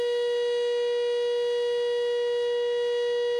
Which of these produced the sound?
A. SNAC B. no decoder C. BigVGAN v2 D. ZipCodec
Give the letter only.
B